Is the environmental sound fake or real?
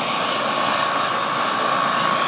real